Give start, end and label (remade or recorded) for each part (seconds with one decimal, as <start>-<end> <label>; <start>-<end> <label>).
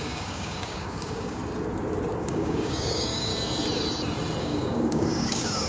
0.0-1.4 remade; 1.4-2.2 recorded; 2.2-3.3 remade; 3.3-4.4 recorded; 4.4-5.7 remade